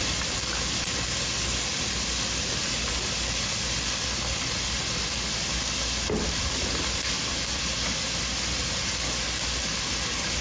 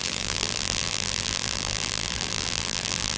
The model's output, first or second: second